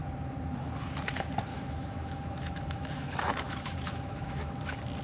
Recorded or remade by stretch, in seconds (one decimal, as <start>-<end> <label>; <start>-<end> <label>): 0.0-1.5 recorded; 1.5-4.5 remade; 4.5-5.0 recorded